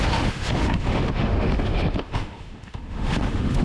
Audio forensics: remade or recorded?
remade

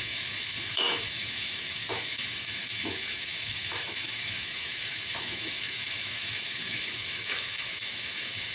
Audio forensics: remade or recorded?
remade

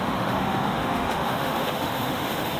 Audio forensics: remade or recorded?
remade